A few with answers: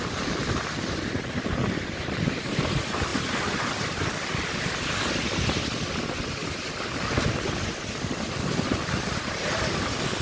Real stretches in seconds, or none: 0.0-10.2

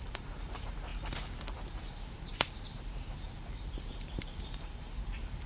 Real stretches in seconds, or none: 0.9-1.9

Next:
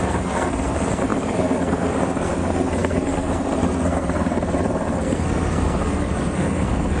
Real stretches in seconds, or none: none

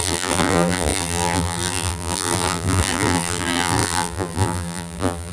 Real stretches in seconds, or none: none

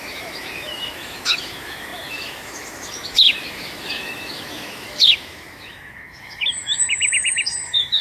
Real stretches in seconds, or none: none

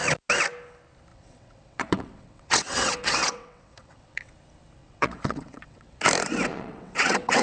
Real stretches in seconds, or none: 0.0-1.1; 4.3-4.8; 6.0-6.5

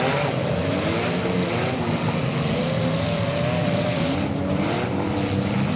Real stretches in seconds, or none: 0.6-2.8